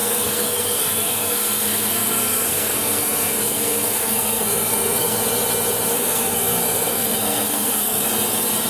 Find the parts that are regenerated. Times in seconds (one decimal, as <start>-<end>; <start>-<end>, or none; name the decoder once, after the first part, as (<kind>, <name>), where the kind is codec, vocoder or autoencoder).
0.0-5.2 (codec, SNAC); 5.9-8.1